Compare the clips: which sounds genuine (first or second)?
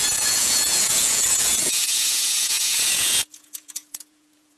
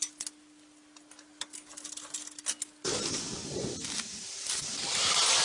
second